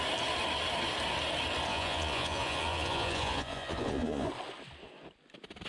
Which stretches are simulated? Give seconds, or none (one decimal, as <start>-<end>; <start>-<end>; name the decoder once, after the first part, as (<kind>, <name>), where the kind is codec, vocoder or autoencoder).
1.7-4.3 (vocoder, Vocos)